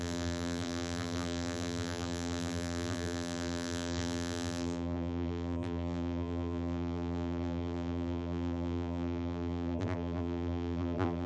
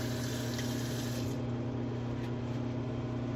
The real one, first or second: second